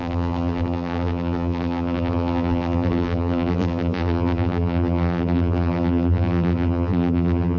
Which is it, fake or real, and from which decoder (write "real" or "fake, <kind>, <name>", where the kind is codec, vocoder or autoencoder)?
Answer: fake, vocoder, BigVGAN v2